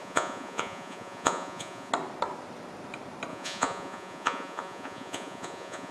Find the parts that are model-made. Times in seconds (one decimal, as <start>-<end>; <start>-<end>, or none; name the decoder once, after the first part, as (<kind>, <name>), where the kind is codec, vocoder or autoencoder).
0.0-1.9 (vocoder, Vocos); 3.3-5.9